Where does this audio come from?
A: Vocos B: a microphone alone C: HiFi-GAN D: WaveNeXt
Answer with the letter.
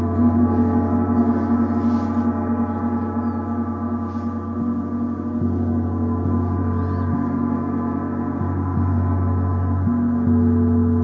B